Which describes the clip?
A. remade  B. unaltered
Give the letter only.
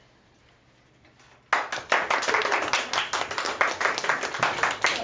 B